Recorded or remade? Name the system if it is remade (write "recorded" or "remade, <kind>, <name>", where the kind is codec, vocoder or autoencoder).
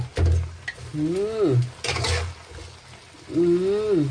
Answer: recorded